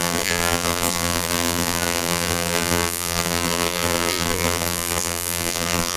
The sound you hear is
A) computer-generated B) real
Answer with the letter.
A